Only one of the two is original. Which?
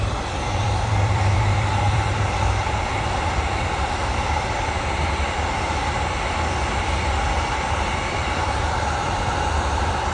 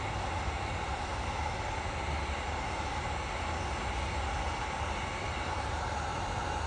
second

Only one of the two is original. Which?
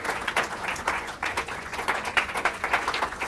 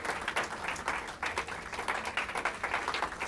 second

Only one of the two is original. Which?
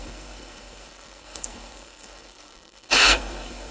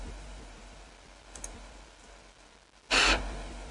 second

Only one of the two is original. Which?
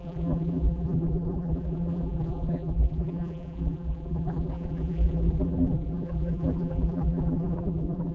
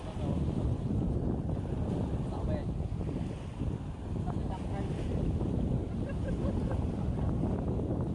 second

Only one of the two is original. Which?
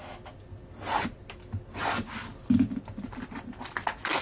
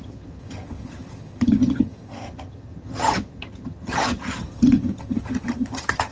first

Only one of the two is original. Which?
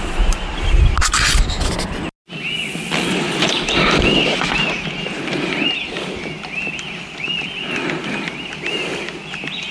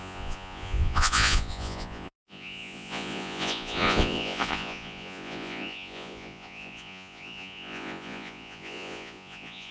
first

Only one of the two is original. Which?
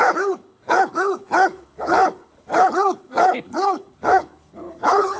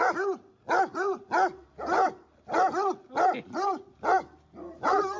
second